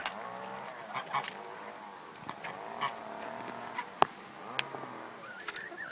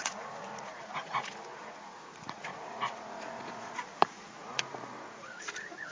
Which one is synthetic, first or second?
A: second